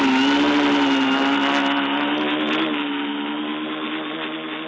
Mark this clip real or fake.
real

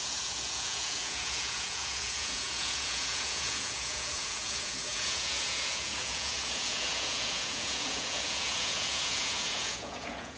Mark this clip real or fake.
fake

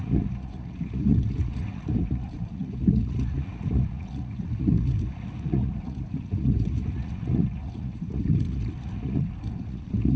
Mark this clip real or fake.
fake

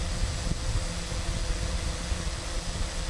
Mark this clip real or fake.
real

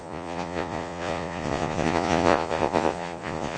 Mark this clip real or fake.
fake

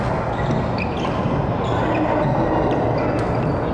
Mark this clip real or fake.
real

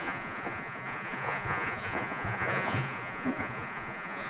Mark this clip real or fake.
fake